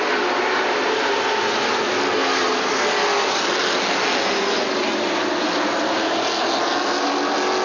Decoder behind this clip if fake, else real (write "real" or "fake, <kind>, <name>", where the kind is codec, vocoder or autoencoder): real